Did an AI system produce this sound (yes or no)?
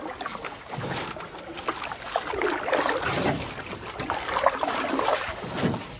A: no